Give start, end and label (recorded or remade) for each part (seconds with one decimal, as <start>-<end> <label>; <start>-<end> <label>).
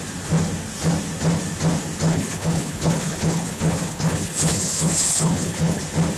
0.0-2.1 recorded; 2.1-5.8 remade; 5.8-6.2 recorded